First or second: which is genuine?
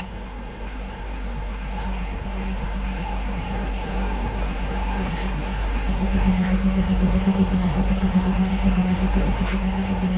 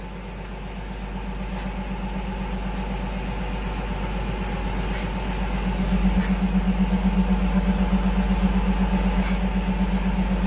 second